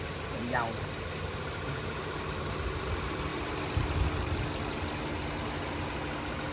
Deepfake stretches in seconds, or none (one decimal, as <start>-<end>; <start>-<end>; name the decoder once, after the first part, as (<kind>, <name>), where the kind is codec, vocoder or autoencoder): none